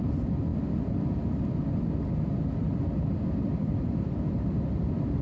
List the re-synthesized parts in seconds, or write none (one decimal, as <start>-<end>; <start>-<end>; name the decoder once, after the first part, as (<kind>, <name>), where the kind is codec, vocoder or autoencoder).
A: none